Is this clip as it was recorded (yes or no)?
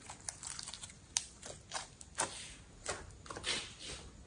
yes